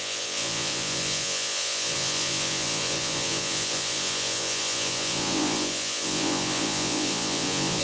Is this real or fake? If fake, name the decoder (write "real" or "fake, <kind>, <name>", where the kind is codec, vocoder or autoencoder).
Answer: fake, vocoder, Vocos